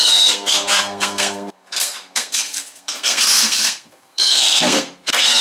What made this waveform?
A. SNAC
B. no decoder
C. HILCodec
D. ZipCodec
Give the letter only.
A